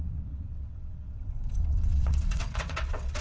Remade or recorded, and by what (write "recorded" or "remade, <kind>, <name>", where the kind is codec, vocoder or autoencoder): remade, vocoder, WaveNeXt